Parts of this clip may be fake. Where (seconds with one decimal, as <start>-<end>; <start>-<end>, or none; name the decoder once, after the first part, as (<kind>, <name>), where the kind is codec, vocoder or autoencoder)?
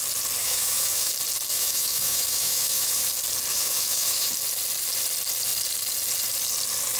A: 0.4-1.1 (autoencoder, DAC-VAE); 1.5-3.1; 3.5-4.3